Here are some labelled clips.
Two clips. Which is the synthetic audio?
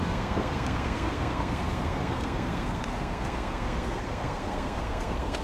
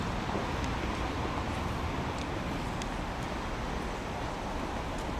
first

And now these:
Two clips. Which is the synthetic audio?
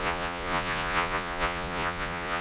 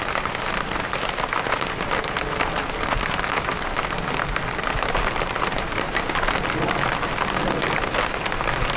first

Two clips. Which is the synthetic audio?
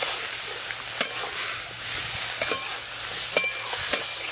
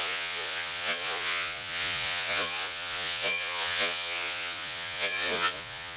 second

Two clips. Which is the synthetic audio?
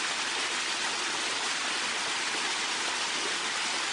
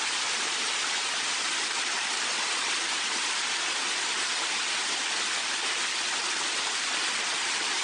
second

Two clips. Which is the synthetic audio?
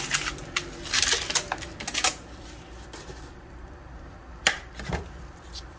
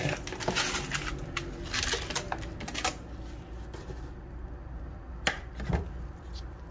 first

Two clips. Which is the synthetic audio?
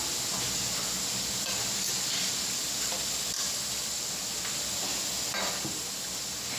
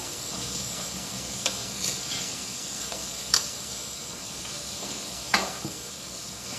second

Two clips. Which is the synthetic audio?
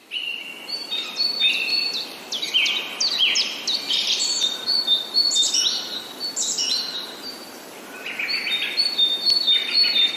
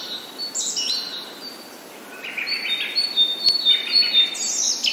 first